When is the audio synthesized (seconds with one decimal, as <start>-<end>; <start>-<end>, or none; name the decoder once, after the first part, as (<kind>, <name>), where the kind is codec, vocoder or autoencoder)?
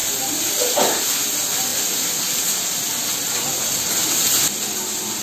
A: 0.0-1.0 (vocoder, BigVGAN v2)